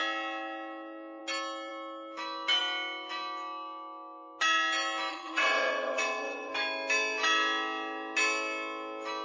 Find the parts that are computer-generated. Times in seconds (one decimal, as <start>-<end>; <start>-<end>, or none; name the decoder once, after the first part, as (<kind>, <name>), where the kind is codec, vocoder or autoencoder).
5.1-6.5 (vocoder, HiFi-GAN)